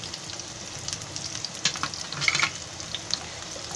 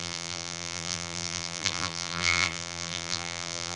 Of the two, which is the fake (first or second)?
second